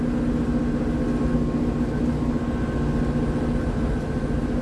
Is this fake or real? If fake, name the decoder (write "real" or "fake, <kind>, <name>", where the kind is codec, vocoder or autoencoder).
real